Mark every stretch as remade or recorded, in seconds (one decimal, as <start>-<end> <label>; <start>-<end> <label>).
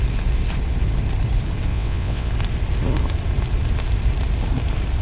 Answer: 0.0-1.7 recorded; 1.7-2.3 remade; 2.3-5.0 recorded